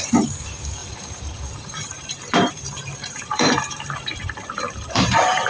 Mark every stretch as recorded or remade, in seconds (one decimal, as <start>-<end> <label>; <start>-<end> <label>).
0.0-5.5 remade